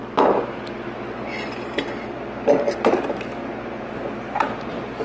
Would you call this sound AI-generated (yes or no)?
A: no